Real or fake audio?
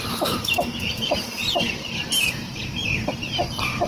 fake